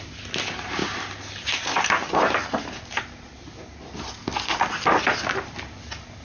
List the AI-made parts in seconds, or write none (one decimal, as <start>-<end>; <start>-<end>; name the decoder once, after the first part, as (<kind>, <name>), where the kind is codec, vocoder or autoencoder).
none